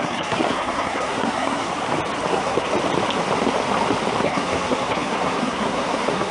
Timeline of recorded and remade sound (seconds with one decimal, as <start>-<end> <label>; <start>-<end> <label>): 0.0-1.7 remade; 1.7-2.3 recorded; 2.3-2.7 remade; 2.7-4.2 recorded; 4.2-6.3 remade